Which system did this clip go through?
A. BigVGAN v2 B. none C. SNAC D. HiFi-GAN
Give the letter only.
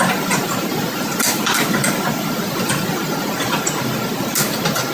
B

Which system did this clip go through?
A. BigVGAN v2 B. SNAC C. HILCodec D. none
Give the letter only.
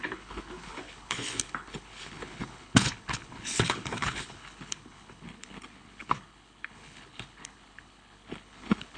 C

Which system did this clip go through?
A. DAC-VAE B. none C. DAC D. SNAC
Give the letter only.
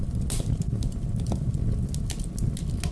B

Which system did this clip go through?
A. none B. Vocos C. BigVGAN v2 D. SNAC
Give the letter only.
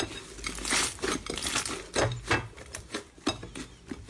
A